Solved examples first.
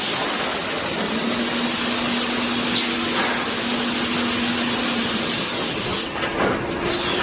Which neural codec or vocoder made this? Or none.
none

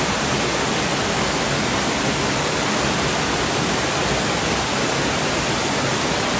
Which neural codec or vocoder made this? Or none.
none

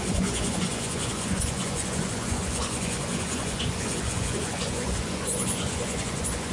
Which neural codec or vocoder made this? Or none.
vocoder, Vocos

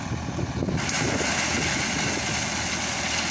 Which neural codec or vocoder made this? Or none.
none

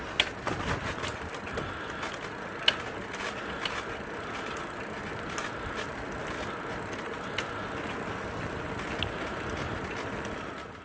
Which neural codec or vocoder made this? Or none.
none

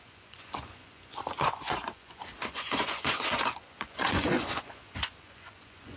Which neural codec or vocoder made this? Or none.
vocoder, Vocos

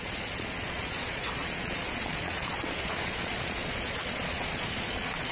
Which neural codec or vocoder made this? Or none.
vocoder, Vocos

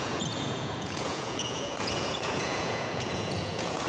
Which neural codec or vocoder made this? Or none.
vocoder, Vocos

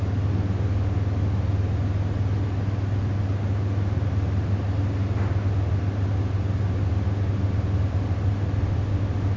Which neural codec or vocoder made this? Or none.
none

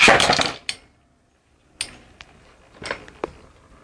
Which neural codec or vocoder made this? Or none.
none